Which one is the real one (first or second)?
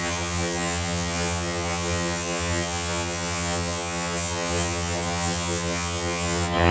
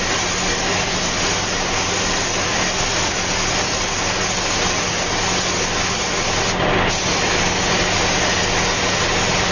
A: second